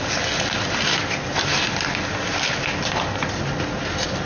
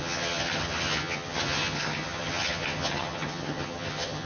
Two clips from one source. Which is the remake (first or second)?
second